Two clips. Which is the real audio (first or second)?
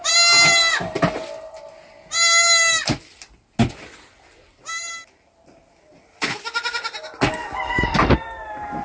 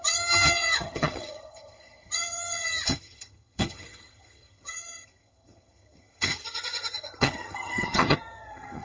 first